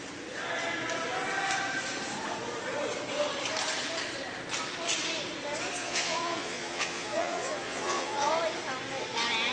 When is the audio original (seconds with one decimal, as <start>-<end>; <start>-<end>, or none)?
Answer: 0.0-5.8; 8.3-9.5